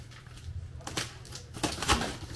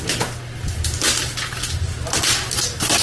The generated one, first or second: first